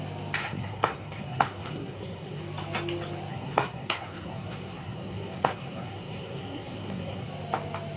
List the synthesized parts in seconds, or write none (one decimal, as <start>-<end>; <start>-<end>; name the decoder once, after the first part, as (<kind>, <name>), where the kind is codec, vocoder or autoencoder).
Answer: 0.4-2.4 (codec, SNAC); 3.3-7.3